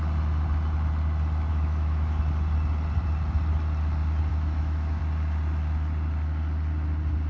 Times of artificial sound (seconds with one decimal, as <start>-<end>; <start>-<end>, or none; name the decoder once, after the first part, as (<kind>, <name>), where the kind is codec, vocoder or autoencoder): 1.5-2.2 (autoencoder, DAC-VAE); 4.3-5.0